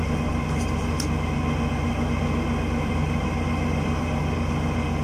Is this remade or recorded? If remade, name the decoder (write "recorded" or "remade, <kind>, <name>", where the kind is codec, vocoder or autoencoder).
remade, vocoder, BigVGAN v2